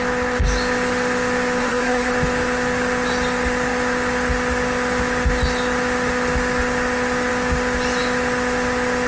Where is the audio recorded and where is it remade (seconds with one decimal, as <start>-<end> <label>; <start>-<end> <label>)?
0.0-1.6 recorded; 1.6-2.1 remade; 2.1-9.1 recorded